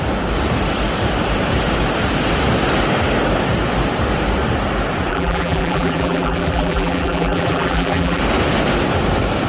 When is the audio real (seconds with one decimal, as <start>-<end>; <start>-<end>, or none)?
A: 0.0-5.1; 8.2-9.5